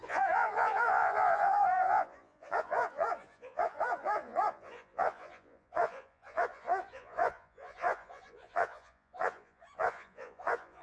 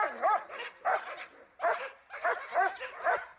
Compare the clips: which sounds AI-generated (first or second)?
first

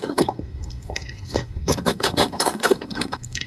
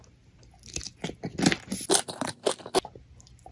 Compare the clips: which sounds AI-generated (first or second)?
first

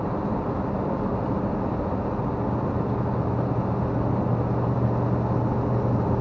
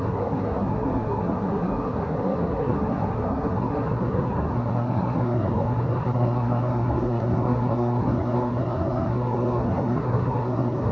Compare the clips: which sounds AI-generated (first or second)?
second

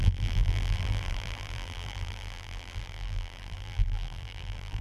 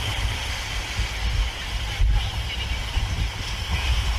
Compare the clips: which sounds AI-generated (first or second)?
first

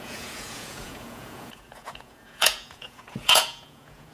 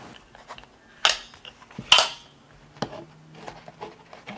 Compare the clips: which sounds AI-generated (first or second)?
first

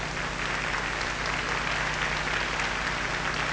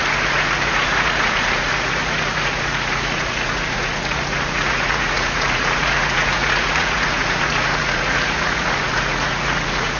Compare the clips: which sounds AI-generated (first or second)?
second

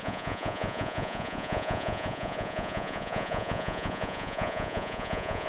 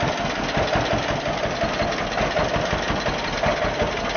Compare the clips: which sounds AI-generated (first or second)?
first